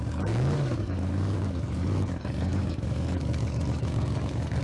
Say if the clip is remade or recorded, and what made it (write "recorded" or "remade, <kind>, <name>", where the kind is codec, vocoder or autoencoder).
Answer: remade, codec, DAC